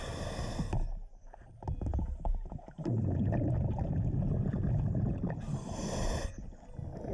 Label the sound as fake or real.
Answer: real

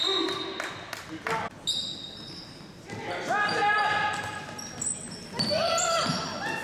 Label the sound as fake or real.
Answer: real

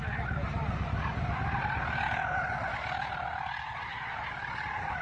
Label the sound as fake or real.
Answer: real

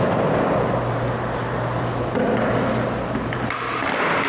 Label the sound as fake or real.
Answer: fake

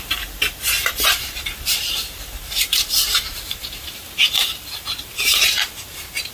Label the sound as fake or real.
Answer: fake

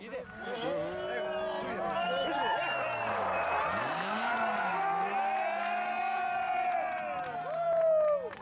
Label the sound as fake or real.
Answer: real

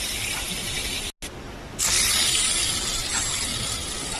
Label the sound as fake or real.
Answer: real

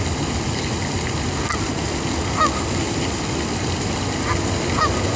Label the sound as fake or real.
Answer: real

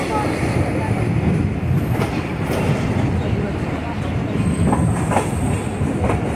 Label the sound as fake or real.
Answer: fake